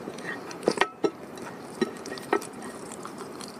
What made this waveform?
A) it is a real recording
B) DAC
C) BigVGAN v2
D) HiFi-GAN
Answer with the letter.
C